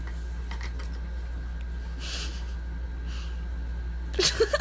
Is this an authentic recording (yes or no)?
yes